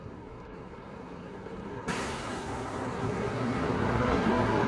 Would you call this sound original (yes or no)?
no